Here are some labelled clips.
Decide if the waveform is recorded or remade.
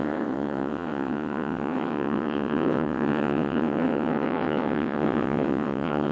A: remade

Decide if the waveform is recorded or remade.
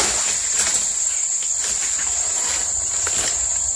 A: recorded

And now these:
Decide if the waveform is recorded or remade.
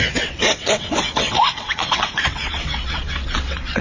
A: remade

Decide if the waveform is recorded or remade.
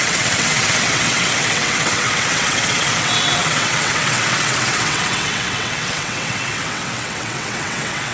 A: remade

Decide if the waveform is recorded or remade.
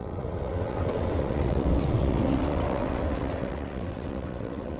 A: remade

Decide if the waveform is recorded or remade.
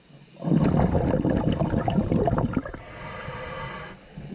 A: recorded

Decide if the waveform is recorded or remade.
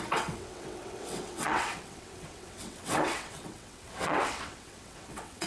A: remade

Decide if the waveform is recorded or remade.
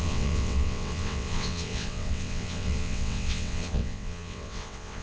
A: remade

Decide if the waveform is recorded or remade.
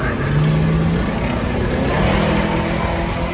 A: recorded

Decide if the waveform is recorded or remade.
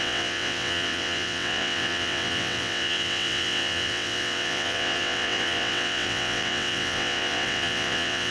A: remade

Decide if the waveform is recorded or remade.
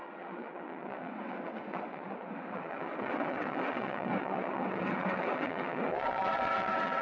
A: remade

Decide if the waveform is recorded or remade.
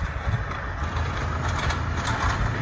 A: recorded